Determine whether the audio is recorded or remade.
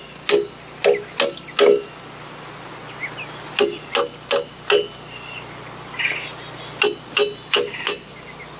recorded